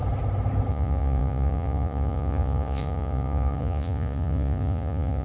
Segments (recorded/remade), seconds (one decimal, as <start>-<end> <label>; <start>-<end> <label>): 0.0-0.7 recorded; 0.7-5.2 remade